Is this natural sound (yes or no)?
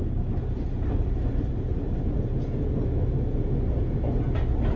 yes